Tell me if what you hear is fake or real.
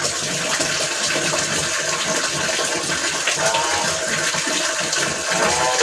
real